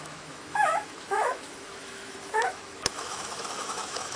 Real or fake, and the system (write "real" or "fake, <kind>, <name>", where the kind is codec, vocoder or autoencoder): fake, autoencoder, DAC-VAE